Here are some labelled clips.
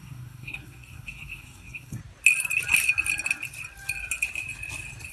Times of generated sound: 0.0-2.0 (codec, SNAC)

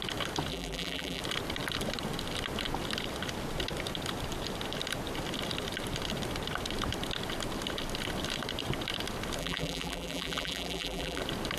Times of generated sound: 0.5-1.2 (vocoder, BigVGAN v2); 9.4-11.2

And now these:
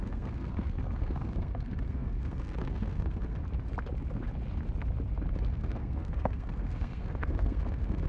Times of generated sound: 0.0-3.4 (codec, SNAC); 5.4-8.1